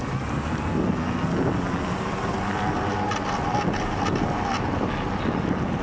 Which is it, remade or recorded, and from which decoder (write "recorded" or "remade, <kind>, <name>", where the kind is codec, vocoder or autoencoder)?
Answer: recorded